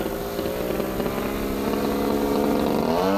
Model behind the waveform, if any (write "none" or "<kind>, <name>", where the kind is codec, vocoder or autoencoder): none